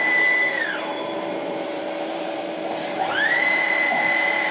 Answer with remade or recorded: remade